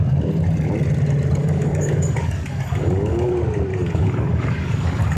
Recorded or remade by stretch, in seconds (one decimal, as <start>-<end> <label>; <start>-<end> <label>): 0.0-1.4 recorded; 1.4-3.3 remade; 3.3-3.7 recorded; 3.7-5.2 remade